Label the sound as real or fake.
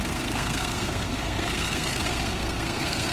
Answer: fake